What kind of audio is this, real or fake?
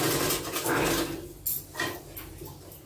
real